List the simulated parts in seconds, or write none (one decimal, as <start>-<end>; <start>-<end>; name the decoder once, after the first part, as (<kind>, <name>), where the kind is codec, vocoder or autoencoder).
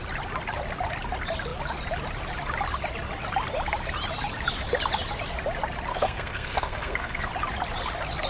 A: 5.9-7.3 (codec, SNAC)